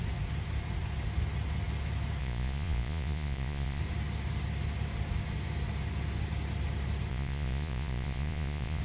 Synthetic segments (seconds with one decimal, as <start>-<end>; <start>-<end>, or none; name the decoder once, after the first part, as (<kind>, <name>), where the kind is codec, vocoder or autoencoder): 2.2-3.8 (vocoder, Vocos); 7.1-8.8